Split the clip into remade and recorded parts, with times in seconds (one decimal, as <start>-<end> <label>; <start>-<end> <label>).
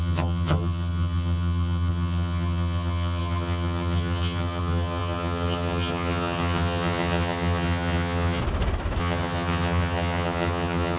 0.0-8.4 remade; 8.4-9.0 recorded; 9.0-11.0 remade